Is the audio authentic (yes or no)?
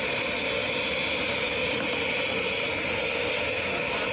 yes